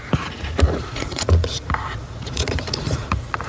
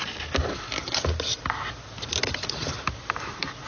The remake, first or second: first